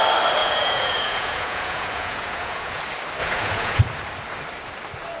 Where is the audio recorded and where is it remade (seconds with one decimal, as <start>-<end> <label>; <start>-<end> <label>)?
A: 0.0-0.4 recorded; 0.4-2.8 remade; 2.8-3.2 recorded; 3.2-3.8 remade; 3.8-5.2 recorded